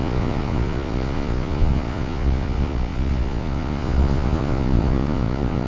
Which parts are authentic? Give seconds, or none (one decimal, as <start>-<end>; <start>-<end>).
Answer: none